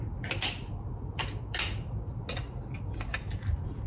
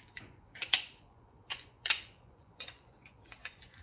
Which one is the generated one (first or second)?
second